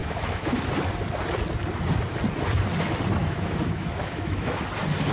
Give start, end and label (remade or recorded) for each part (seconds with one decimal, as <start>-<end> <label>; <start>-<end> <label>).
0.0-0.6 remade; 0.6-3.2 recorded; 3.2-4.6 remade; 4.6-5.1 recorded